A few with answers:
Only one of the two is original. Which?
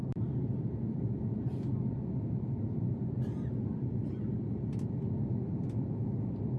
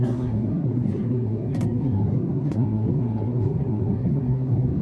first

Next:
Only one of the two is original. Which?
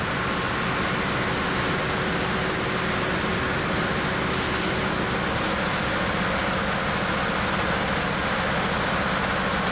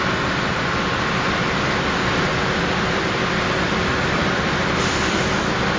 first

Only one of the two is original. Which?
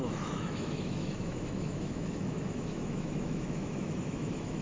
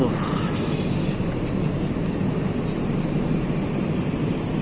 second